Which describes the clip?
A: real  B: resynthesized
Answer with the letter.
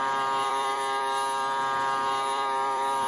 B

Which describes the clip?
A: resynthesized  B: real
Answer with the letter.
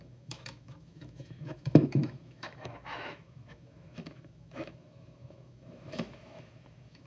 A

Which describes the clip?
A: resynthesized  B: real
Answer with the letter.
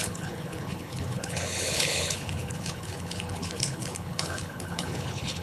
A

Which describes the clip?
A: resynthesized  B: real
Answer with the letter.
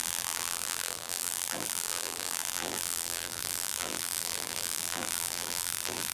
A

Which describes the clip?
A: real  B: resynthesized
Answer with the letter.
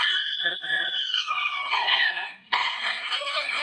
B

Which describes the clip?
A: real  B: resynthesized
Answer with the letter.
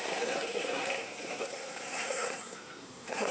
B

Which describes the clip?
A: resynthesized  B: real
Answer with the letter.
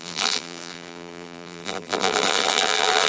A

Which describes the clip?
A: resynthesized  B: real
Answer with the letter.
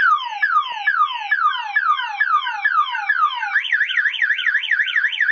B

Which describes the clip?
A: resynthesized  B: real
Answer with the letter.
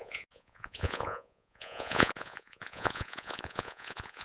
A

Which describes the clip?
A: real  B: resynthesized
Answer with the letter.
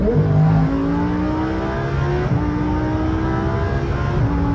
A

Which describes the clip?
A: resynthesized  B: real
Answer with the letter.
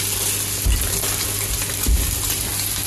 B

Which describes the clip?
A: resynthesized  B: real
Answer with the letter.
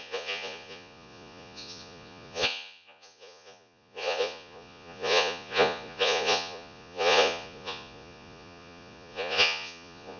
A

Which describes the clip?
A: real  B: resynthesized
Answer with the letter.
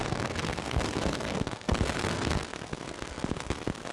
B